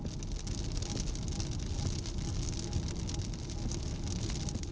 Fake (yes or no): no